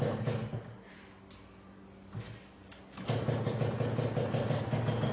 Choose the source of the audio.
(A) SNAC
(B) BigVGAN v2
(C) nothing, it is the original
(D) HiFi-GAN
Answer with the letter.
C